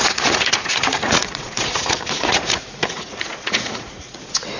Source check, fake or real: fake